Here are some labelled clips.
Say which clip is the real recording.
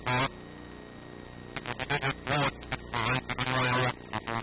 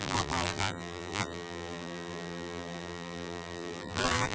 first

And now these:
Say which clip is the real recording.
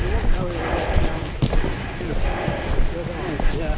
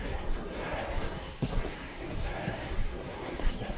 first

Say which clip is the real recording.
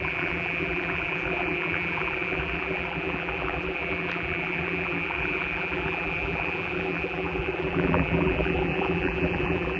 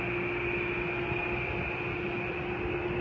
second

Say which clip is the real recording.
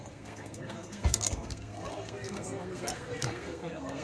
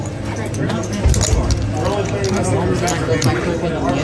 second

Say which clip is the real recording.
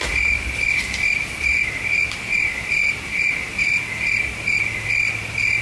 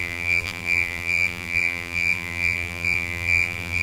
first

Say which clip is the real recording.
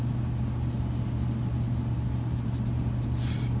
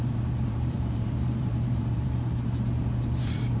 first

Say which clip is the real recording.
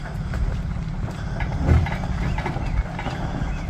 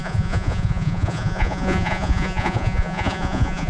first